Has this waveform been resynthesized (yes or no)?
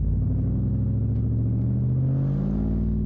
no